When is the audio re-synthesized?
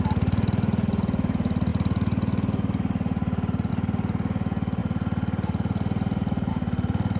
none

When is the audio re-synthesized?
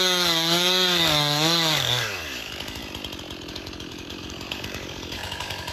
0.0-2.8 (codec, DAC); 3.5-5.7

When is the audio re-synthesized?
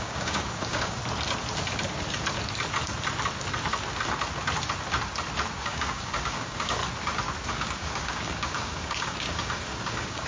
0.0-1.0 (codec, DAC); 5.6-6.8; 7.5-10.3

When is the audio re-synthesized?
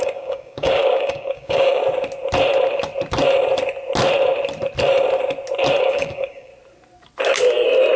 0.0-1.8 (codec, DAC); 5.8-6.5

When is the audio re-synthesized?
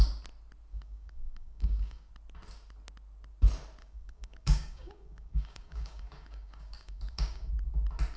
0.7-2.1 (codec, DAC); 3.8-7.5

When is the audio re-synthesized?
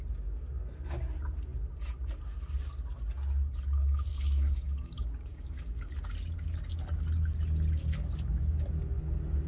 4.1-5.9 (codec, DAC)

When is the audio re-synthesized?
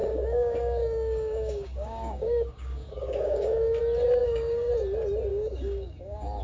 0.0-3.8 (codec, DAC); 4.2-4.7; 5.3-6.4